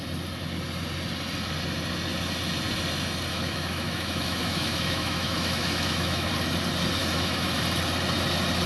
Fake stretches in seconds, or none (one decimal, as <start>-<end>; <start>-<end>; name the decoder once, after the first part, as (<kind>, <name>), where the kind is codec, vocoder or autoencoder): 3.3-6.3 (autoencoder, DAC-VAE); 7.0-7.6